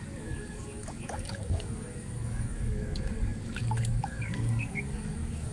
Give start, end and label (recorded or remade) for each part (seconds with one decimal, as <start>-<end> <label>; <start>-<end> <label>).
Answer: 0.0-5.5 remade